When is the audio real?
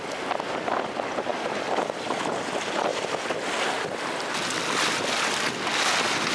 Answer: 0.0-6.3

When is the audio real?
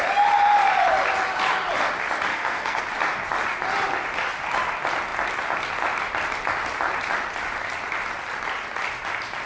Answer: 0.0-2.3; 2.8-9.5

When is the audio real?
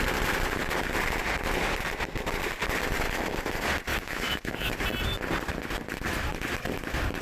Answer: 0.0-3.9; 4.7-7.2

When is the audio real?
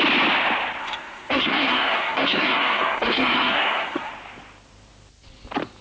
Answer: 0.0-0.8; 4.1-5.8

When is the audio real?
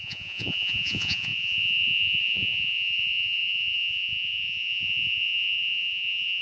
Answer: none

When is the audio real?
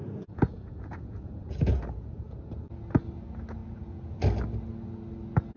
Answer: 2.7-3.6; 4.1-5.6